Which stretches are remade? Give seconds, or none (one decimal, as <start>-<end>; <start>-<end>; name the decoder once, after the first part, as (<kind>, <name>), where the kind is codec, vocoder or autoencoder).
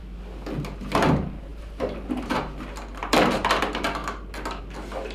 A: 1.5-2.4 (vocoder, BigVGAN v2); 3.0-3.6